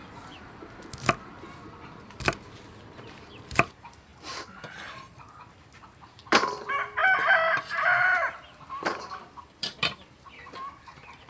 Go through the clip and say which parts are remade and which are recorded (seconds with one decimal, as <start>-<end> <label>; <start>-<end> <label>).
0.0-3.4 recorded; 3.4-4.1 remade; 4.1-6.3 recorded; 6.3-7.0 remade; 7.0-7.6 recorded; 7.6-11.3 remade